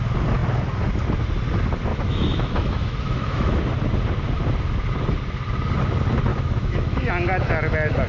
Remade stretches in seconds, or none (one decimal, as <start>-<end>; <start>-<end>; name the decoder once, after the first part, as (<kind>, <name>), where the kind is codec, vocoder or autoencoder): 1.9-3.6 (autoencoder, DAC-VAE); 6.3-7.1